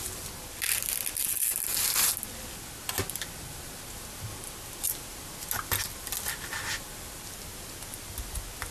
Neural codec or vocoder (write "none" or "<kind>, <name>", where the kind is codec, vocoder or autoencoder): none